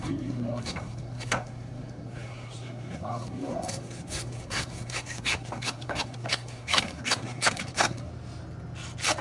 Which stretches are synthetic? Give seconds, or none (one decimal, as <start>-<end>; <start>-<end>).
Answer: 0.0-8.1